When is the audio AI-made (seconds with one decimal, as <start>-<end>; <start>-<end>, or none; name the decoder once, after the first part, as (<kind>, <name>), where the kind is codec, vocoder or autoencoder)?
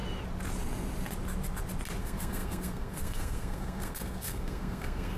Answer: 2.0-5.2 (codec, SNAC)